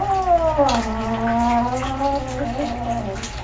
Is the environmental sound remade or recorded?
recorded